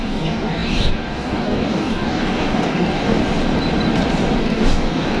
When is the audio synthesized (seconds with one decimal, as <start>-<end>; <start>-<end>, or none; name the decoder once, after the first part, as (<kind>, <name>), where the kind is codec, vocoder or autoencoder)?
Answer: 0.0-3.2 (codec, DAC); 4.4-5.2